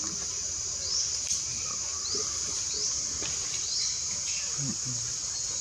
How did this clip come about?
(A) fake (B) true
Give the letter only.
A